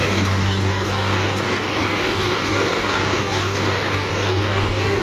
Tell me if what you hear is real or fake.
fake